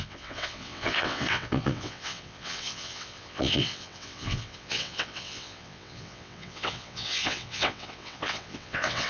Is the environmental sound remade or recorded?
remade